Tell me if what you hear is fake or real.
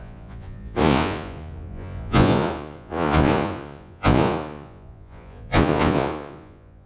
fake